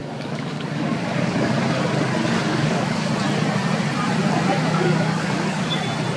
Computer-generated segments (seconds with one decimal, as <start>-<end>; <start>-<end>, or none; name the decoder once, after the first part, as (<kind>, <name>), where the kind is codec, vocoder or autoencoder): 0.0-1.5 (codec, DAC); 2.5-3.1; 4.6-5.8